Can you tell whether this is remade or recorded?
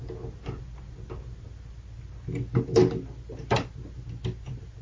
recorded